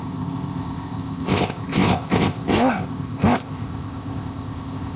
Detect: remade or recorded remade